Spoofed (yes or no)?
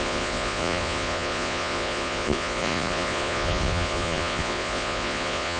yes